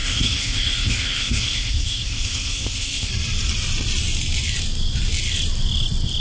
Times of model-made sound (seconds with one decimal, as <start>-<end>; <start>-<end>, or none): 0.0-3.1